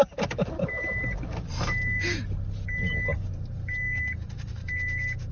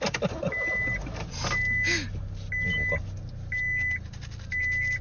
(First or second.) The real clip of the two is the second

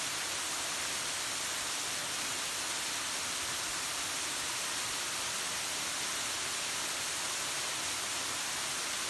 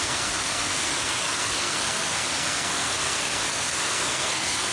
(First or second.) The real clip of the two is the first